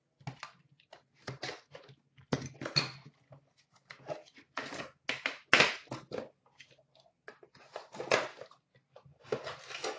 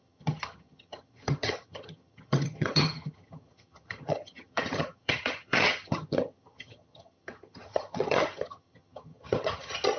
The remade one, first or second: second